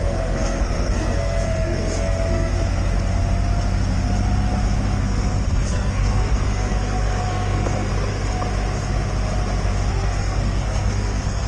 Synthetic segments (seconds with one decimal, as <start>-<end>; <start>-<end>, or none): 0.0-2.5; 5.0-7.9; 9.9-11.5